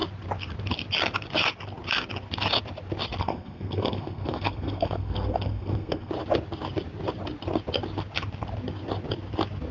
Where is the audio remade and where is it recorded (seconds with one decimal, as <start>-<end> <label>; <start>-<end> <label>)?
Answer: 0.0-3.2 recorded; 3.2-6.1 remade; 6.1-9.7 recorded